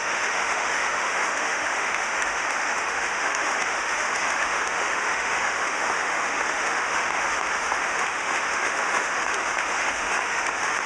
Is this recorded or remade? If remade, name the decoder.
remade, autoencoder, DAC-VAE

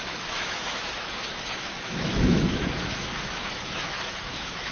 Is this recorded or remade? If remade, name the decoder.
remade, autoencoder, DAC-VAE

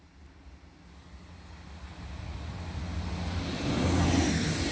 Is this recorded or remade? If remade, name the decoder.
recorded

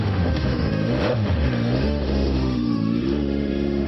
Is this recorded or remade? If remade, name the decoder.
remade, autoencoder, DAC-VAE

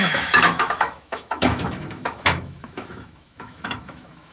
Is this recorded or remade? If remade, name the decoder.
remade, autoencoder, DAC-VAE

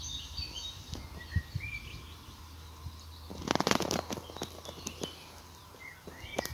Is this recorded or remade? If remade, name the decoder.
recorded